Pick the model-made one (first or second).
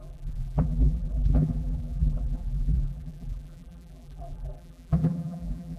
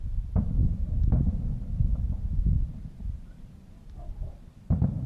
first